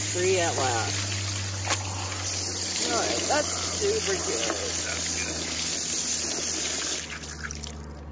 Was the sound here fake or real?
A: real